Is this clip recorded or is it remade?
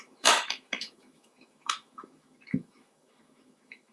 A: remade